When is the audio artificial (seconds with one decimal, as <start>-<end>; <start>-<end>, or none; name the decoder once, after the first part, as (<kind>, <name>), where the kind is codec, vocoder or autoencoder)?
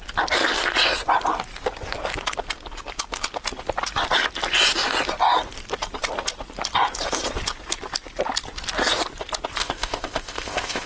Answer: 9.6-10.9 (codec, ZipCodec)